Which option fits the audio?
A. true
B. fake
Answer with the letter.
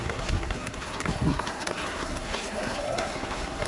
B